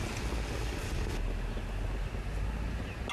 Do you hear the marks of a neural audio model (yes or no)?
no